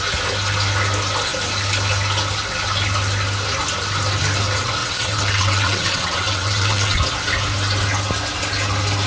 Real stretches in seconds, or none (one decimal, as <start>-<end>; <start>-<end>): 0.0-4.8; 7.0-9.1